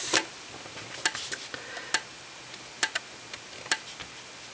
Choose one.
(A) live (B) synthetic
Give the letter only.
A